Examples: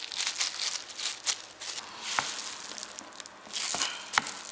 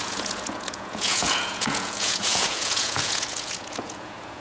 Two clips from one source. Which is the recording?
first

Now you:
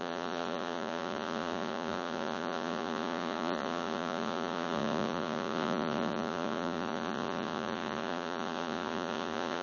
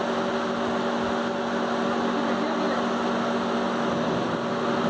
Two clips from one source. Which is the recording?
second